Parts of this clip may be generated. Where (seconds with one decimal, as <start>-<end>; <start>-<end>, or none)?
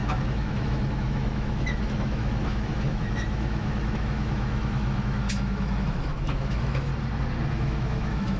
0.0-6.9; 7.5-8.4